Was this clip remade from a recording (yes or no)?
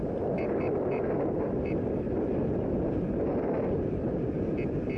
no